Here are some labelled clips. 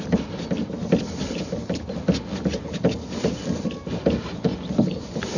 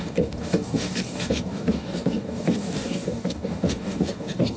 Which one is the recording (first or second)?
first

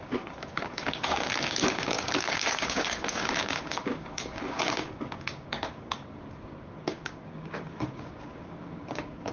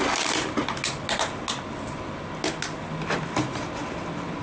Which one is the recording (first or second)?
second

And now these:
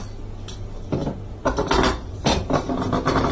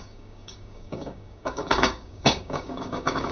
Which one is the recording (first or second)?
first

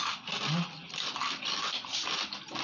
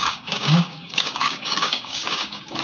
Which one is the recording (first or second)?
first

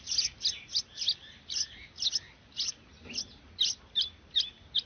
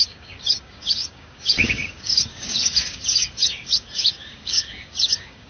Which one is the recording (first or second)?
first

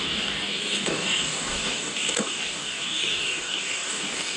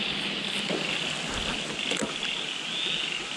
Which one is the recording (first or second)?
second